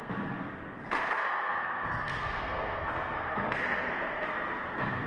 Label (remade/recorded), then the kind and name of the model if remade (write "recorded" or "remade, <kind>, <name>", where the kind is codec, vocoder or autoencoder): remade, codec, SNAC